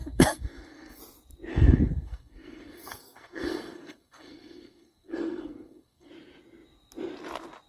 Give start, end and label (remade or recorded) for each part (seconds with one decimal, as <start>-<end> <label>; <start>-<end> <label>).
0.0-1.0 remade; 1.0-1.5 recorded; 1.5-6.1 remade; 6.1-7.7 recorded